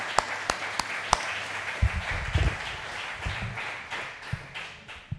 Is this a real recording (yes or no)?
yes